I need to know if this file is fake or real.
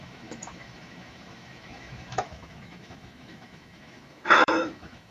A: fake